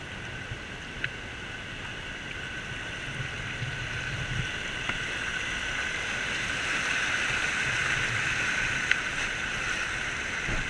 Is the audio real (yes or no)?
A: yes